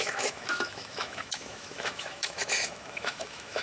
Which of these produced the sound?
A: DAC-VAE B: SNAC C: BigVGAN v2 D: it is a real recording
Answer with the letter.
A